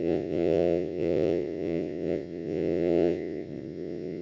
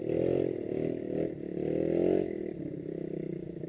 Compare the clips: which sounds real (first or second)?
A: second